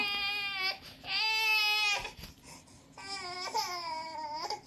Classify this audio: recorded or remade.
recorded